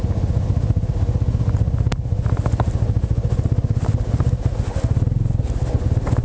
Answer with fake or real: real